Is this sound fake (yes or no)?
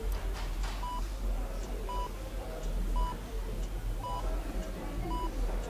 no